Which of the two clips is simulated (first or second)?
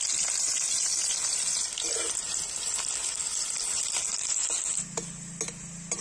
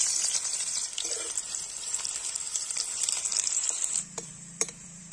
second